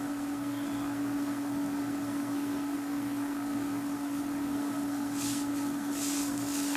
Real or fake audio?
fake